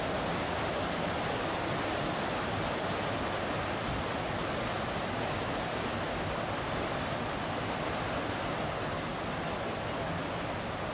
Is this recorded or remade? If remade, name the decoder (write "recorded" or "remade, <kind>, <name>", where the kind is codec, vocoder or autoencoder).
recorded